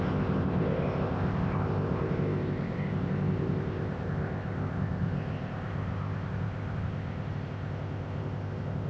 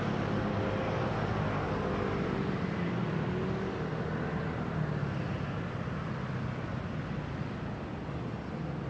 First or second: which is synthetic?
first